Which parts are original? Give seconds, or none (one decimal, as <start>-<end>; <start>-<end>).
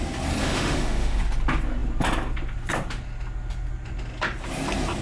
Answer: 0.0-0.4; 1.2-5.0